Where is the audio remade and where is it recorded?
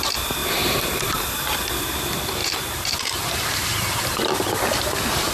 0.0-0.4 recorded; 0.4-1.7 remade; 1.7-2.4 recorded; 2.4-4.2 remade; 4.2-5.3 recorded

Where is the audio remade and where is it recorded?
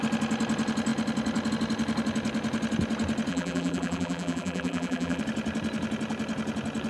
0.0-3.3 recorded; 3.3-5.2 remade; 5.2-6.9 recorded